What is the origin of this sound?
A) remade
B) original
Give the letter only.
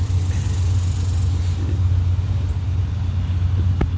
B